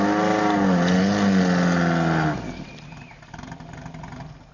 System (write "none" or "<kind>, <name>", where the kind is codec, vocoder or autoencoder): none